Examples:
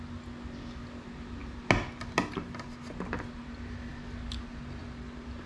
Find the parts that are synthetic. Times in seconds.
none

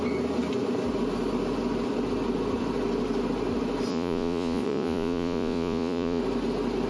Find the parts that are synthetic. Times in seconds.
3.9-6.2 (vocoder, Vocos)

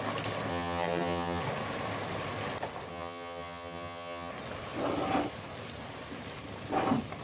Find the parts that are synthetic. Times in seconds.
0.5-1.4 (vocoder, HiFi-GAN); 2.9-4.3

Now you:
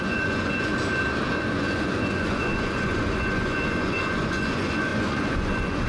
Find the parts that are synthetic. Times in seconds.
0.0-0.7 (vocoder, Vocos); 1.3-5.9

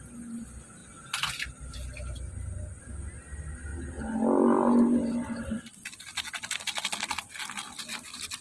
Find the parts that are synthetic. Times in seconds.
none

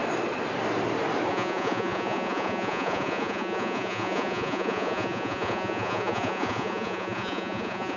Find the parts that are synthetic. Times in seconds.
1.3-8.0 (vocoder, Vocos)

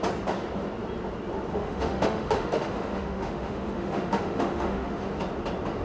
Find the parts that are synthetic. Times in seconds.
1.5-5.0 (autoencoder, DAC-VAE)